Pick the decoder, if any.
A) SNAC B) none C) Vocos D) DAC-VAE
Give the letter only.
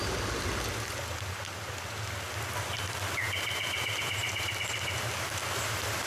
B